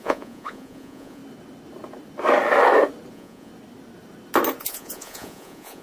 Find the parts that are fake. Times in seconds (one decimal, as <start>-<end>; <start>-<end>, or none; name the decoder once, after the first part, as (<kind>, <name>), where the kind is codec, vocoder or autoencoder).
0.0-1.2 (vocoder, Vocos); 3.1-3.5; 4.6-5.8